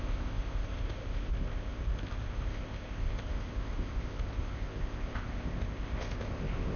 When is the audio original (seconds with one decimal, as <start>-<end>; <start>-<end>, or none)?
none